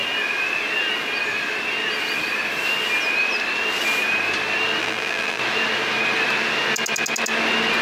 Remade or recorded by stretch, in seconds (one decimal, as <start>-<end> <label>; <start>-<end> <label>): 0.0-4.8 recorded; 4.8-5.4 remade; 5.4-7.8 recorded